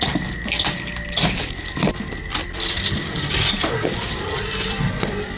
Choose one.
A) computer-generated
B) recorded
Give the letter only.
A